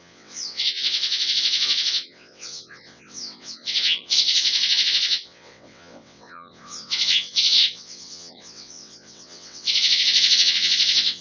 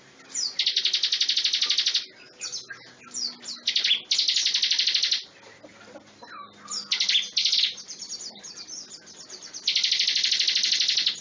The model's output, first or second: first